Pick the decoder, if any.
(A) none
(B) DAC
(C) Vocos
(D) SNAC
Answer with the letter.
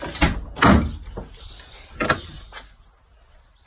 A